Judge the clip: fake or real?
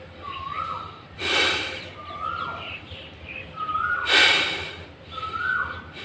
fake